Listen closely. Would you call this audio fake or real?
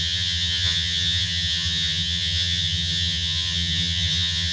fake